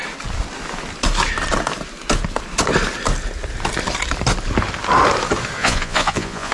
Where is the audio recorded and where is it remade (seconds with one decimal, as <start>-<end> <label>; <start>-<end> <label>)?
0.0-5.6 recorded; 5.6-6.5 remade